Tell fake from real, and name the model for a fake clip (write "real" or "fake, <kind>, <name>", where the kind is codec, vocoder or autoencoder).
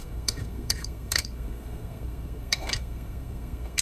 fake, codec, SNAC